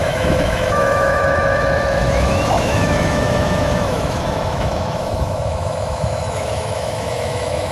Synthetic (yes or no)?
yes